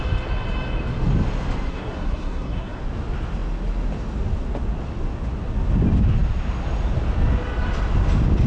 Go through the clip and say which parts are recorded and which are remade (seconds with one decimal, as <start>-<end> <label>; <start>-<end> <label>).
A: 0.0-1.7 recorded; 1.7-2.8 remade; 2.8-8.5 recorded